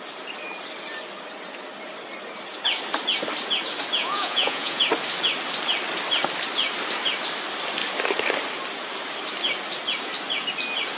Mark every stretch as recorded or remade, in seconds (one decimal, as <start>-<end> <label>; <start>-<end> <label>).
0.0-4.0 recorded; 4.0-4.8 remade; 4.8-11.0 recorded